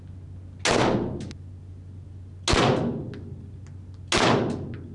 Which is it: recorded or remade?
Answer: recorded